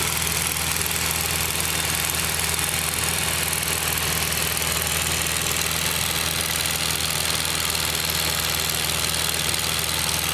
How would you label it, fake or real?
real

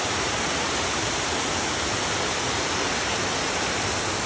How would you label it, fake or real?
real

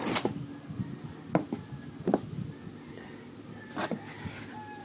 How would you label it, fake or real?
real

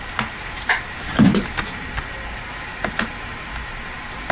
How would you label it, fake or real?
fake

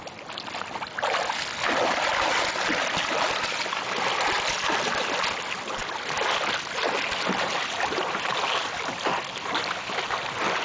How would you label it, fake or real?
real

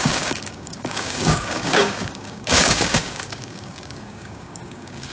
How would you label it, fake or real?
fake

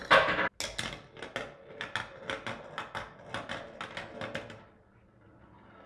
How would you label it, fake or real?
real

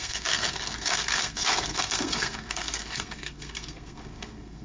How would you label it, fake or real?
fake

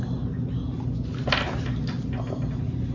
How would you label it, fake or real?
real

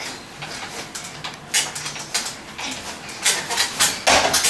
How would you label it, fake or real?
real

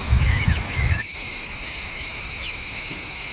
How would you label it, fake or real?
fake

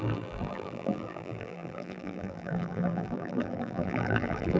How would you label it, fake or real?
fake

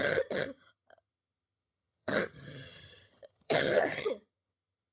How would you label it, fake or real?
fake